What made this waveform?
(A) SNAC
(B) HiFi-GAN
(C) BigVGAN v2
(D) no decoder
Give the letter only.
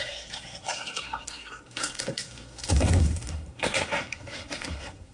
A